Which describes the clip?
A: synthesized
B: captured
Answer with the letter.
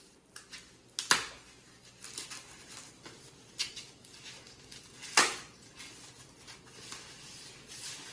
B